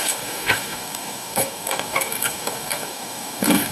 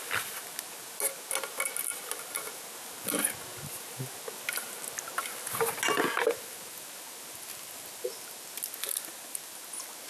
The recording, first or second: second